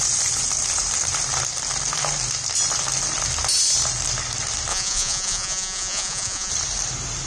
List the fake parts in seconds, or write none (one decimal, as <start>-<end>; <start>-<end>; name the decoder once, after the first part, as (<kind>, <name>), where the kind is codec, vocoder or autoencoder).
4.7-6.5 (vocoder, Vocos)